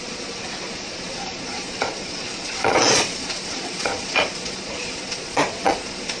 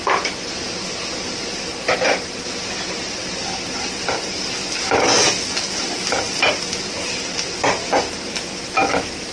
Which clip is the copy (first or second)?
first